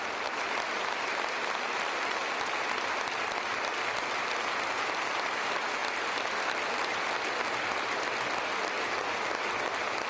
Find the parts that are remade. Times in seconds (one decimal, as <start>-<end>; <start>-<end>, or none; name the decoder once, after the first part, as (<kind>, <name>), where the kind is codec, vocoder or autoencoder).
none